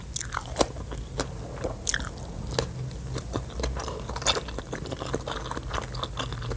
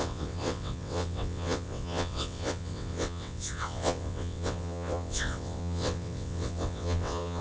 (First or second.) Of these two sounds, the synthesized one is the second